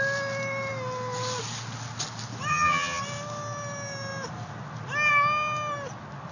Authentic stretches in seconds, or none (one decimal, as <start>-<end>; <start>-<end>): 0.0-2.5; 3.0-6.3